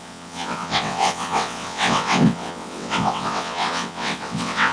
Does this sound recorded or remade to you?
remade